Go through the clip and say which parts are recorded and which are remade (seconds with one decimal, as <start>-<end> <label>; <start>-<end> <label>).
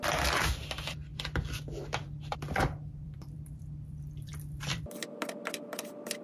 0.0-1.1 recorded; 1.1-4.8 remade; 4.8-6.2 recorded